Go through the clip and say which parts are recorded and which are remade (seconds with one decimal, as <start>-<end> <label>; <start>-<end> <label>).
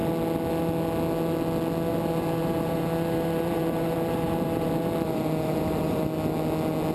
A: 0.0-1.9 recorded; 1.9-6.0 remade; 6.0-6.9 recorded